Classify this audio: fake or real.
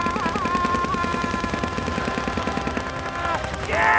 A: real